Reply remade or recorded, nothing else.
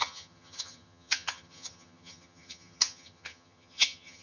remade